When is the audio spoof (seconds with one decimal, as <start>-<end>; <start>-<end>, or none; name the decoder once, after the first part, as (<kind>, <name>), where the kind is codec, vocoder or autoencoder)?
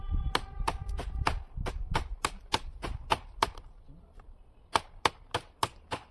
none